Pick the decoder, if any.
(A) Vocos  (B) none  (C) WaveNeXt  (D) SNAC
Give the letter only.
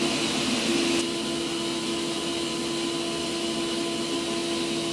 B